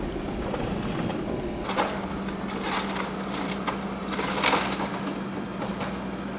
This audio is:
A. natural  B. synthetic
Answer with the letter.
A